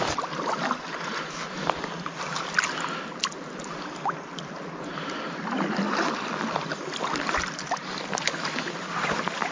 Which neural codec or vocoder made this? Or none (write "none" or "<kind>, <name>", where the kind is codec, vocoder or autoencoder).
none